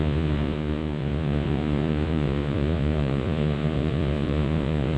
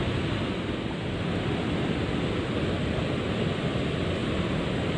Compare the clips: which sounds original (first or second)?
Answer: second